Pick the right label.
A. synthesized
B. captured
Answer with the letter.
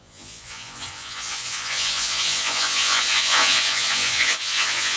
A